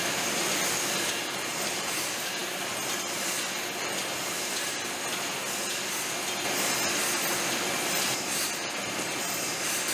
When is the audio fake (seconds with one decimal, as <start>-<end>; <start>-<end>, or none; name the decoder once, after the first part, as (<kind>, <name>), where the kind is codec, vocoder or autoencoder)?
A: none